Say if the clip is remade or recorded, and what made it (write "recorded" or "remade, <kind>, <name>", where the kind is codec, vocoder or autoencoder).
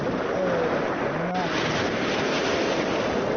recorded